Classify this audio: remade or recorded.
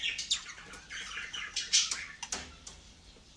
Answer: recorded